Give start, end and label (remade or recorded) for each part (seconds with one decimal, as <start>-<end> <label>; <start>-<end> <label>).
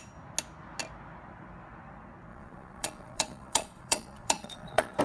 0.0-2.3 recorded; 2.3-5.0 remade